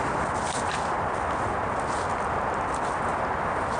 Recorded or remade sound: recorded